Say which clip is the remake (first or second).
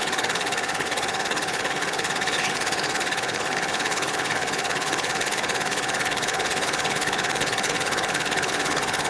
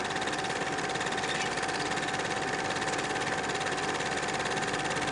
first